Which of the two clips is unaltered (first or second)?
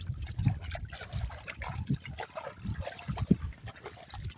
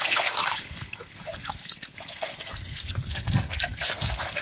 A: first